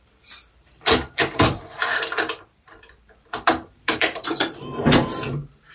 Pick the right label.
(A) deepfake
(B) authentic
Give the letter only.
A